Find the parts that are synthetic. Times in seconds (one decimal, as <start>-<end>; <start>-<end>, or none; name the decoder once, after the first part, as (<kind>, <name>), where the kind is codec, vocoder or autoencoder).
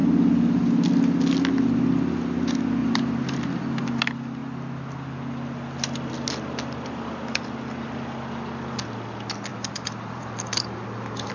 2.8-4.0 (vocoder, BigVGAN v2); 9.5-11.3